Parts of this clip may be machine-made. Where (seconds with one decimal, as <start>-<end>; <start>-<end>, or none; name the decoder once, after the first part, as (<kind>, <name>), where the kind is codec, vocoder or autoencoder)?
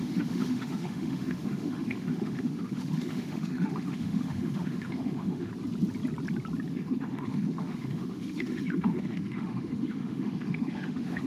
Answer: 0.0-5.5 (autoencoder, DAC-VAE); 6.7-11.3